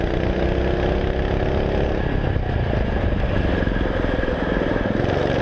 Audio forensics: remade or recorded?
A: recorded